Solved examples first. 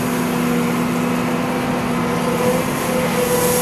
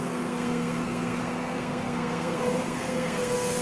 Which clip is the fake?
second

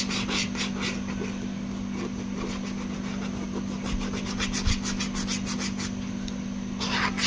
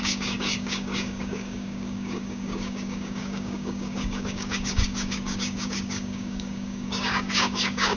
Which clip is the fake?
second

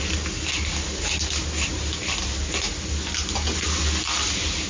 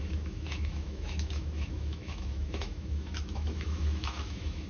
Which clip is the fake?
second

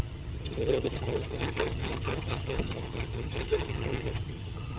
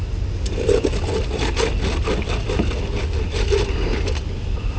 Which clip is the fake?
first